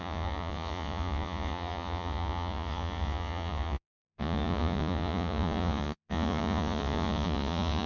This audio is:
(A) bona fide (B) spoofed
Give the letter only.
B